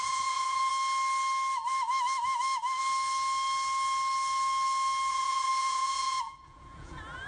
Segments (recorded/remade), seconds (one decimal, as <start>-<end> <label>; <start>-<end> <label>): 0.0-0.7 remade; 0.7-5.1 recorded; 5.1-7.3 remade